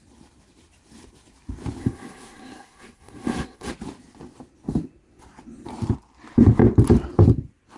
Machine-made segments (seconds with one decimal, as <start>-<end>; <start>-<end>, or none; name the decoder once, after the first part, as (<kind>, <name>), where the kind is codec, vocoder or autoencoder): 1.8-3.7 (codec, SNAC)